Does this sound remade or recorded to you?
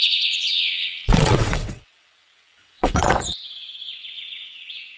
remade